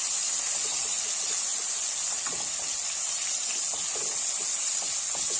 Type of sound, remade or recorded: recorded